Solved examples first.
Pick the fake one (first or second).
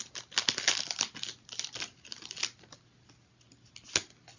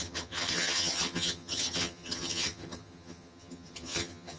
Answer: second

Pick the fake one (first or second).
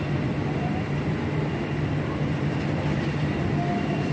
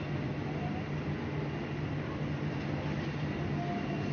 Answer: first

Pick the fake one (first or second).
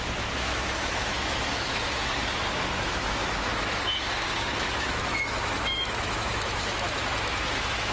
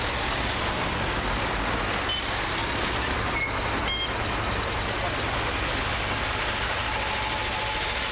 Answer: first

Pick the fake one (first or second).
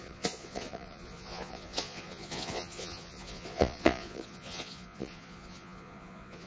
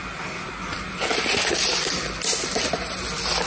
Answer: first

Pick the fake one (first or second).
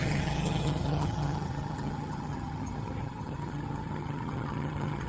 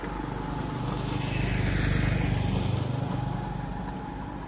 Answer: first